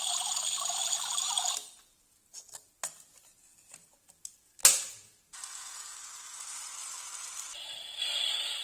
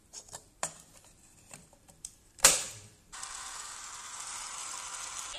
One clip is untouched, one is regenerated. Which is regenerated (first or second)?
second